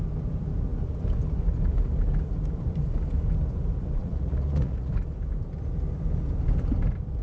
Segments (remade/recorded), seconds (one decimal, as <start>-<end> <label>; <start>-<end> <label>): 0.0-4.0 recorded; 4.0-4.9 remade; 4.9-7.2 recorded